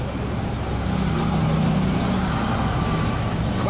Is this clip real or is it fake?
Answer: real